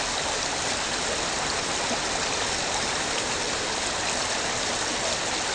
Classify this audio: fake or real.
real